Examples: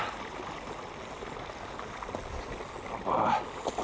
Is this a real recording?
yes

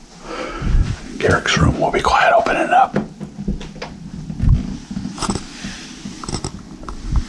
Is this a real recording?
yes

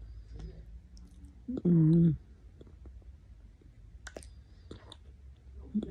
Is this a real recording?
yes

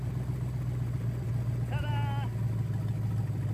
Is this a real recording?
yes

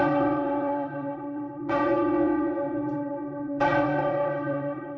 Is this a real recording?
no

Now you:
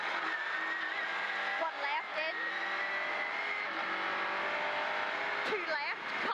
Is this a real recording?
yes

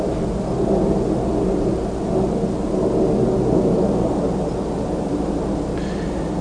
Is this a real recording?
yes